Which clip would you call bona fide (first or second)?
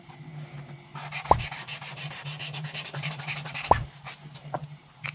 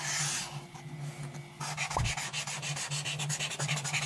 second